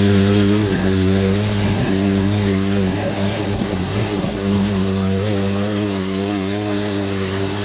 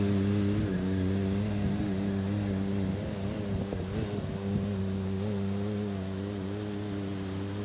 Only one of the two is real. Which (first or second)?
second